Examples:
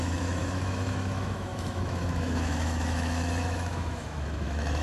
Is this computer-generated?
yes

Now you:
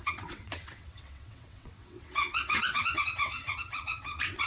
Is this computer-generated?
yes